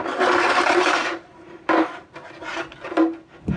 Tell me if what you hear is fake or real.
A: fake